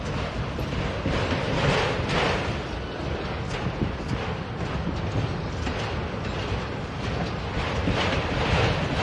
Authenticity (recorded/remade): recorded